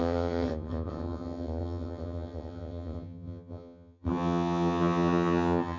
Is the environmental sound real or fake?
fake